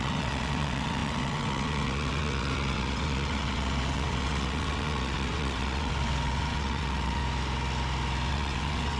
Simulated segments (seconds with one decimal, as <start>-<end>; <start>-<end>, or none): 0.0-7.2; 8.3-9.0